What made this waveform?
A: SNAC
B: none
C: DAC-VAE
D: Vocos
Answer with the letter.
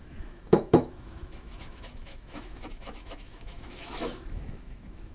C